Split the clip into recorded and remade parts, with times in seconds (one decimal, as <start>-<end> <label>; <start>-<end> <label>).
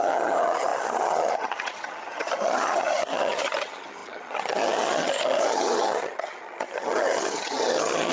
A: 0.0-8.1 remade